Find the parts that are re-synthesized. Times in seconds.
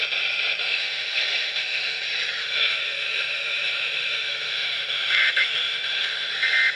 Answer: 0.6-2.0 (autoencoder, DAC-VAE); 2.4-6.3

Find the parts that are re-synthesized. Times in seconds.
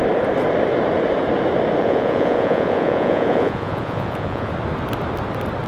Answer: 1.8-4.5 (vocoder, Vocos)